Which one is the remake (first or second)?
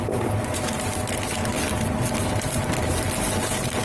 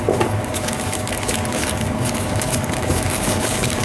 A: second